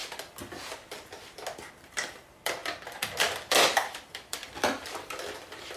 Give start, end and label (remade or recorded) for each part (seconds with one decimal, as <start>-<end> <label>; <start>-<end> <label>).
0.0-1.7 recorded; 1.7-5.8 remade